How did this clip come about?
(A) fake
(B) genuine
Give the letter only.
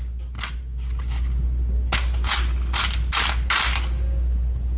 B